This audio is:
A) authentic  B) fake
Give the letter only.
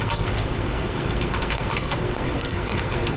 B